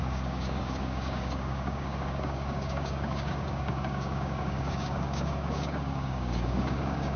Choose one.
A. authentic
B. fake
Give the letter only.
B